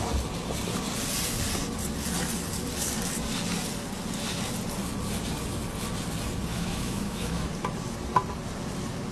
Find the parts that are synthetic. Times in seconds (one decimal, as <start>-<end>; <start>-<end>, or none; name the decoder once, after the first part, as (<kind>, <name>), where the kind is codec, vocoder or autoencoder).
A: 6.5-7.5 (autoencoder, DAC-VAE)